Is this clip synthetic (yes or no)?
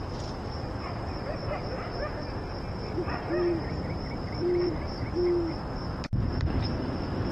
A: yes